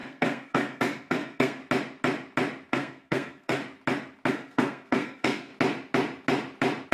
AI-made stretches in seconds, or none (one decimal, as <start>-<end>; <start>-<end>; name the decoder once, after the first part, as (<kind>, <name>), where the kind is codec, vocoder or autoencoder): 0.0-1.6 (codec, SNAC); 2.7-3.6; 4.3-5.5